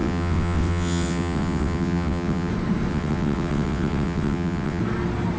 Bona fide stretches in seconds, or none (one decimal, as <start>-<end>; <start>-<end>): 2.5-2.9; 4.8-5.4